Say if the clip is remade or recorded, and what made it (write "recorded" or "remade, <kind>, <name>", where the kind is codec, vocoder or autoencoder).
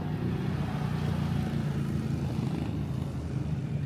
recorded